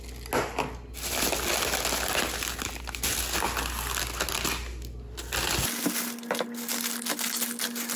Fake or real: real